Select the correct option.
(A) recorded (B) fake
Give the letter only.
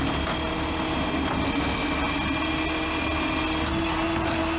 A